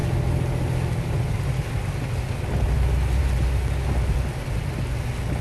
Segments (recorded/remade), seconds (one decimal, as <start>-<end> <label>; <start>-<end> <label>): 0.0-5.4 recorded